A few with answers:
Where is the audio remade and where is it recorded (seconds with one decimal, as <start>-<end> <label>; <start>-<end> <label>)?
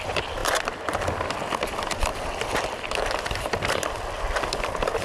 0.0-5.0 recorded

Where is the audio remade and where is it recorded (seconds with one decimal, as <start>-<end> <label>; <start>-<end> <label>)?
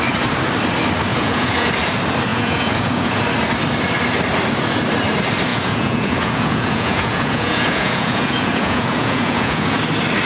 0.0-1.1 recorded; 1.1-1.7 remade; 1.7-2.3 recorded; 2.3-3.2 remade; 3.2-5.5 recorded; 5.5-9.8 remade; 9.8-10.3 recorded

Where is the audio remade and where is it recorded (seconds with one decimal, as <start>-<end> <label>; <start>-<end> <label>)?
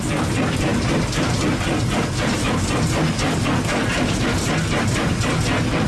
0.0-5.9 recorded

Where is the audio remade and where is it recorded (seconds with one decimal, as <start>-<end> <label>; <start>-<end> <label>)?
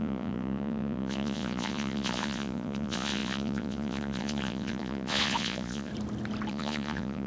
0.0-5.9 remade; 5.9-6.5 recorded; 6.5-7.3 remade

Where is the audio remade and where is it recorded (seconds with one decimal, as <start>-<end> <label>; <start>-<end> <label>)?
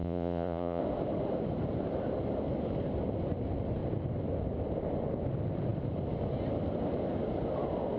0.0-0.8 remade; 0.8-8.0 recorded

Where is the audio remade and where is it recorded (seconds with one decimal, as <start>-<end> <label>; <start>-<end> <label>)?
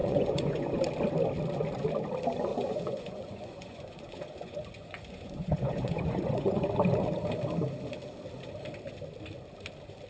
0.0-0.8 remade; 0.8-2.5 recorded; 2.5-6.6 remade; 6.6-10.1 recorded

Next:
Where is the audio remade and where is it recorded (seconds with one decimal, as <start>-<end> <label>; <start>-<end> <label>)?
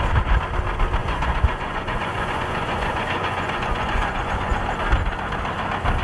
0.0-1.0 recorded; 1.0-4.6 remade; 4.6-6.0 recorded